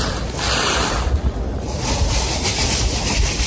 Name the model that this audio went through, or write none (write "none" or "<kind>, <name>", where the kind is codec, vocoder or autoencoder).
none